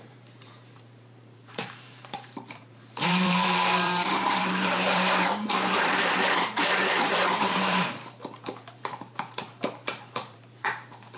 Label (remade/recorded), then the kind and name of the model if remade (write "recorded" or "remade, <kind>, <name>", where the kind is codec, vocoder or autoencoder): remade, vocoder, BigVGAN v2